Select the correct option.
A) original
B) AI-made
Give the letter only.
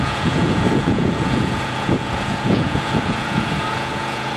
B